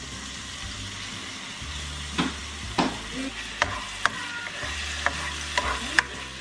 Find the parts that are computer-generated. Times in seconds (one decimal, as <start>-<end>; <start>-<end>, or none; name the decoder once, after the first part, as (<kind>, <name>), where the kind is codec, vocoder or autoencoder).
none